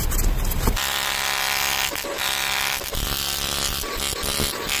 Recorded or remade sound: recorded